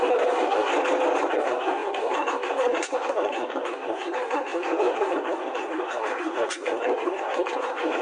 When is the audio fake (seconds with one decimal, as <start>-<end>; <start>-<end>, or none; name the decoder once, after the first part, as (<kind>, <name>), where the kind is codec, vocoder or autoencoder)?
0.0-0.7 (codec, SNAC); 1.3-8.0